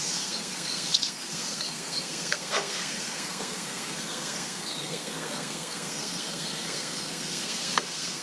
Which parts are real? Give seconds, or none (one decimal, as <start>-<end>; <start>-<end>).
none